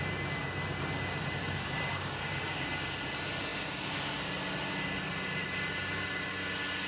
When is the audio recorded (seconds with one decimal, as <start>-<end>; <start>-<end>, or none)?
0.0-1.4; 2.7-6.9